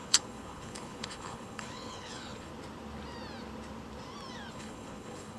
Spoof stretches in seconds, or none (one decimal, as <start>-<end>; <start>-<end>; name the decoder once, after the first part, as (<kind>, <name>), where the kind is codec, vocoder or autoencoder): 0.0-2.5 (codec, HILCodec); 4.5-5.4